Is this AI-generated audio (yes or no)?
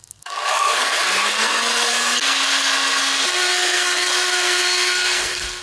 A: yes